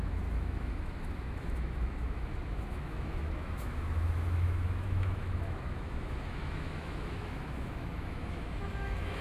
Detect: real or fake fake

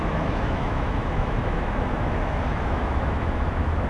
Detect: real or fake fake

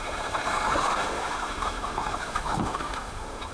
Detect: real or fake fake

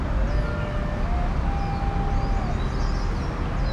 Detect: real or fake real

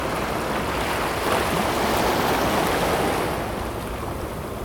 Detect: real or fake real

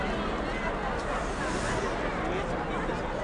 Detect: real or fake real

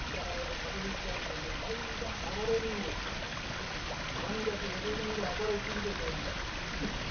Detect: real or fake real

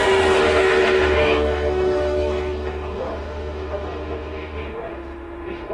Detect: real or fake fake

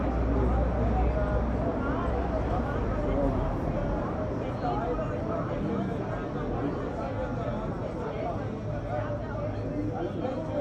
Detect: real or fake real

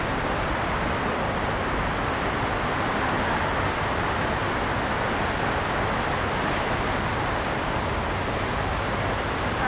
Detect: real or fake real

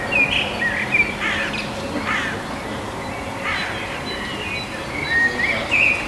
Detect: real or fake real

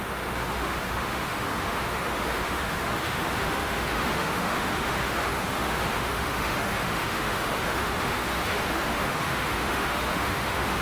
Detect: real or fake fake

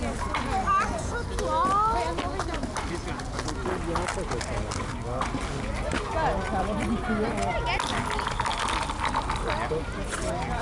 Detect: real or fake real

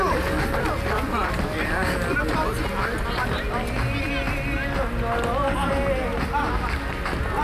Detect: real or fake real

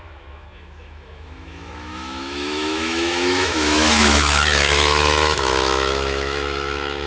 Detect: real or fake fake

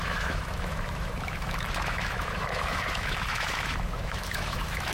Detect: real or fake fake